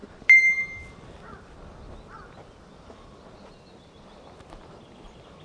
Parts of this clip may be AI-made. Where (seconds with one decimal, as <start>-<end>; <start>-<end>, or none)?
none

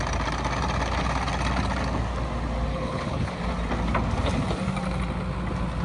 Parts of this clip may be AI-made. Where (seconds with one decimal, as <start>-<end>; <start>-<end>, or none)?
2.7-3.4

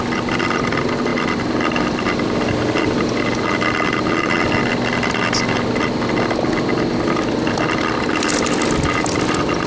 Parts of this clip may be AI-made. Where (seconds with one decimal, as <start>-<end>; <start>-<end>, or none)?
none

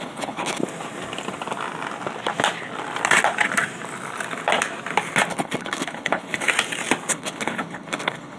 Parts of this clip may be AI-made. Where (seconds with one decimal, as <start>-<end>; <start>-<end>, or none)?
0.0-0.6; 5.3-6.5; 7.1-8.4

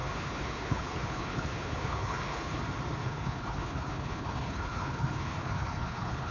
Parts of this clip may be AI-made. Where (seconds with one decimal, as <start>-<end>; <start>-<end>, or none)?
0.0-2.6; 3.0-6.3

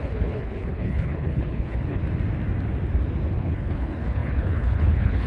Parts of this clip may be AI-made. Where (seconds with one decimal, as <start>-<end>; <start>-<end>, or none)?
0.0-2.0; 3.3-5.3